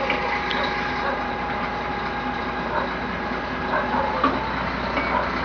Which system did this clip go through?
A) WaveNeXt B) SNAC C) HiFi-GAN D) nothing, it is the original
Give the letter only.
D